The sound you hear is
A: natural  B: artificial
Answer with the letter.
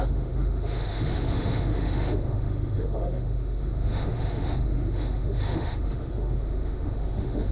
B